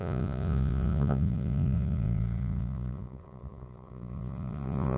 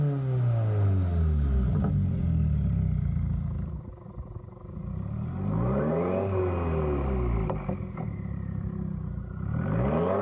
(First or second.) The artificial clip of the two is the first